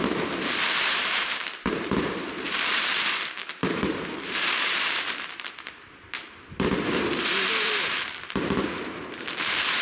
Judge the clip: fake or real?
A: fake